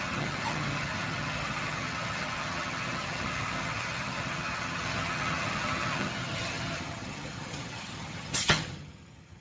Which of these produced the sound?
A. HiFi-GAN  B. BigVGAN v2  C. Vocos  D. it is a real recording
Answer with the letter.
A